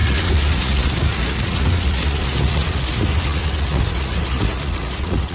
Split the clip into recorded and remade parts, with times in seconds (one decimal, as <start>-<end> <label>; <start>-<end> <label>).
0.0-5.3 remade

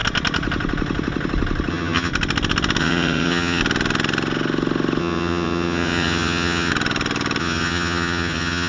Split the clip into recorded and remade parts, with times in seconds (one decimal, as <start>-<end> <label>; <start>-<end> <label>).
0.0-1.7 recorded; 1.7-2.1 remade; 2.1-2.8 recorded; 2.8-3.6 remade; 3.6-5.0 recorded; 5.0-6.7 remade; 6.7-7.4 recorded; 7.4-8.7 remade